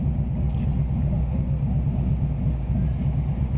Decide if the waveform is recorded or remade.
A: recorded